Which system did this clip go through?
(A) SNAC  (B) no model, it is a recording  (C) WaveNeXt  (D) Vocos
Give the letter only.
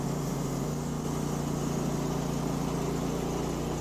B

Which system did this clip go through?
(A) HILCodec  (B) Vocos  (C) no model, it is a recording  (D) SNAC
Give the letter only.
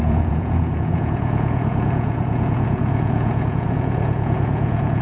B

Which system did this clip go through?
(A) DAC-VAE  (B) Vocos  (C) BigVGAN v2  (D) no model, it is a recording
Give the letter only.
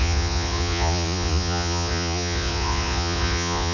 B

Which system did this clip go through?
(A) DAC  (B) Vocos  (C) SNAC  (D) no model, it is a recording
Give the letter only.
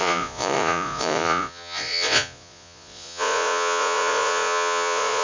B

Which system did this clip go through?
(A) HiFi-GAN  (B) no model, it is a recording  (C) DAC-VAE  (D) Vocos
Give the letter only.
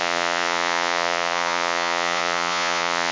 D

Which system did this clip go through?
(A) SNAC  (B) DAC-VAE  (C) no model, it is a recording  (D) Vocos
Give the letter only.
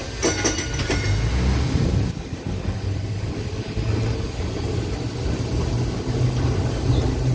C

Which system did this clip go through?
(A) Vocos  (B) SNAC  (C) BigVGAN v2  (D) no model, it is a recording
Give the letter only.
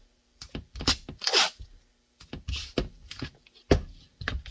D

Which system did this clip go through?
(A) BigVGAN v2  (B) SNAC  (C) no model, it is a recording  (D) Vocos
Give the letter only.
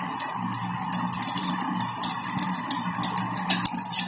C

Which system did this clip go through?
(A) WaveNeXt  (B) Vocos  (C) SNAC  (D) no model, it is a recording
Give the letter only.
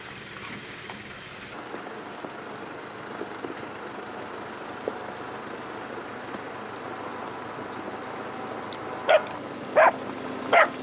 D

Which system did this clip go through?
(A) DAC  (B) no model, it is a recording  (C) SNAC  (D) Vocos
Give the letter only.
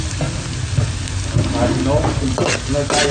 B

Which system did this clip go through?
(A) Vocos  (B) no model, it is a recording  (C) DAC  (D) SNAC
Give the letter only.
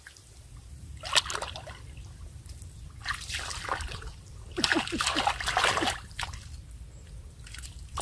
B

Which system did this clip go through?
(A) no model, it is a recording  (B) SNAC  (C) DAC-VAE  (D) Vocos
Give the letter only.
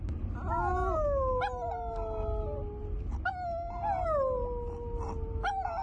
A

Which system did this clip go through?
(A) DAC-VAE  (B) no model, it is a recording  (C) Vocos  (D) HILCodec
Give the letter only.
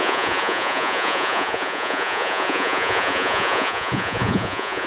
C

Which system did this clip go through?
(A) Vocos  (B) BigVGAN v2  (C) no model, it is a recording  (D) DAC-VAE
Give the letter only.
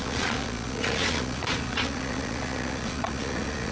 A